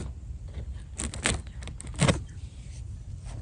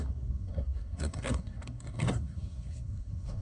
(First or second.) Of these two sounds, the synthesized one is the second